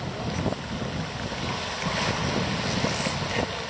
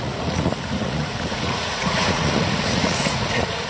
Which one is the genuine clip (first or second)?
first